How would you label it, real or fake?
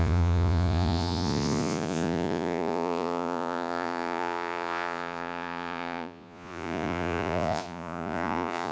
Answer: fake